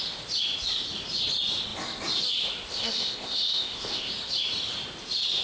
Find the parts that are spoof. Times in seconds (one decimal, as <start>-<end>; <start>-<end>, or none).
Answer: 2.7-4.1